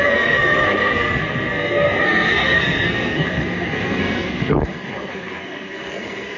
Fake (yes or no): yes